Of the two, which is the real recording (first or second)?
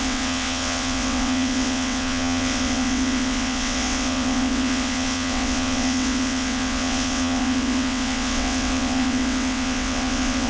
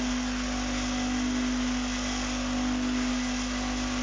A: second